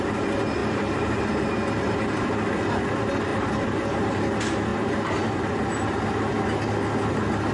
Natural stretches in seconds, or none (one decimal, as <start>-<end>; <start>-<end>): 0.0-0.6; 1.2-3.3; 4.2-7.5